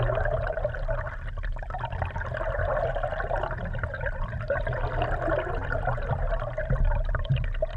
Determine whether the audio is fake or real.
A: real